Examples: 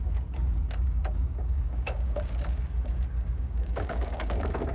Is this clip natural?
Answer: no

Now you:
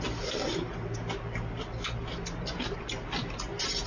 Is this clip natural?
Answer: yes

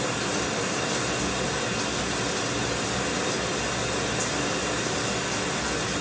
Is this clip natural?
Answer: yes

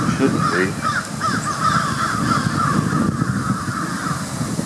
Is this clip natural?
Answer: yes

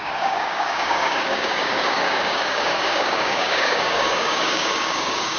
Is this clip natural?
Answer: no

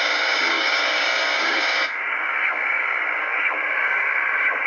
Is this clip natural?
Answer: no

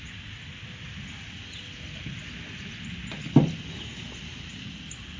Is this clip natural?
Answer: yes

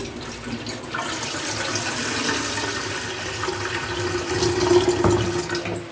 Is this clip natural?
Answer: yes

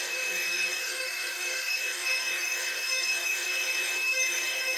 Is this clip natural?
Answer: no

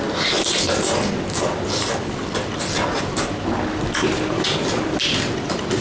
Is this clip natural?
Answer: yes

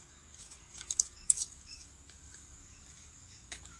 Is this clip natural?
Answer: no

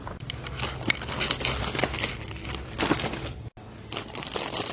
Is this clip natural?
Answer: yes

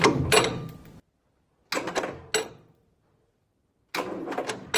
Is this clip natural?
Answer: yes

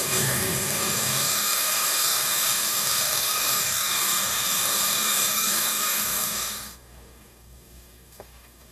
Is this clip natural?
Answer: no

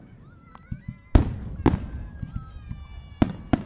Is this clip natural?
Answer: yes